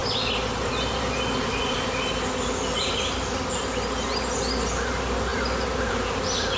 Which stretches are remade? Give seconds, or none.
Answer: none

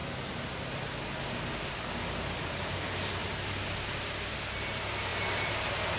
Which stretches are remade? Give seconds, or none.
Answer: none